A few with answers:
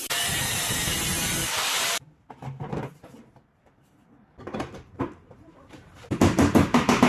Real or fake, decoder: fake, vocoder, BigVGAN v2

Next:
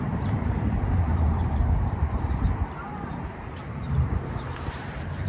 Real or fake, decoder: fake, vocoder, BigVGAN v2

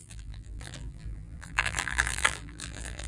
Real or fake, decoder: fake, vocoder, BigVGAN v2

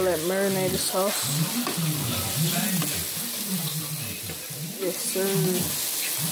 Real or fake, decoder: real